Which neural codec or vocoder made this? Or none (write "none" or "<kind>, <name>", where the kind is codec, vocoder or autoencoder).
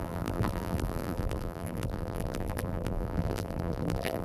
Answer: vocoder, BigVGAN v2